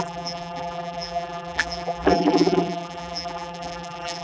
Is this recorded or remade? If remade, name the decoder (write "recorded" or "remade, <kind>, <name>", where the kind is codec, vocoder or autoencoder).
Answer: remade, vocoder, BigVGAN v2